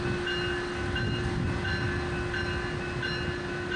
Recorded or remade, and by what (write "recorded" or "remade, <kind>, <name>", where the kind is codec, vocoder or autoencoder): recorded